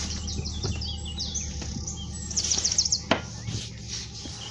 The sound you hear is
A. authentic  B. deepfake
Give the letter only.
A